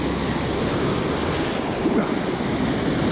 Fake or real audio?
real